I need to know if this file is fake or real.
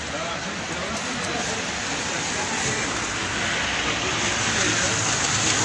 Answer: real